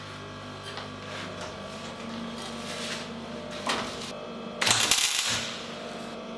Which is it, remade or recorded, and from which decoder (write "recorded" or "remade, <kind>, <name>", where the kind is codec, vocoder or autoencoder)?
recorded